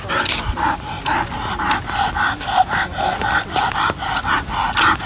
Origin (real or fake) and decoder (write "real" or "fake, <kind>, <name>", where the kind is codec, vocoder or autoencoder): real